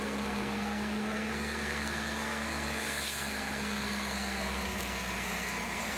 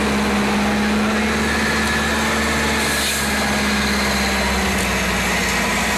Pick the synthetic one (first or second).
first